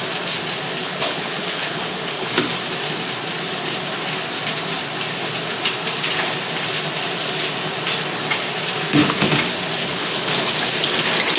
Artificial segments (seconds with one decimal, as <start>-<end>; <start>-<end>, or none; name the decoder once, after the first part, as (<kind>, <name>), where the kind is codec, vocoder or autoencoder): 0.8-2.4 (codec, HILCodec); 9.8-10.5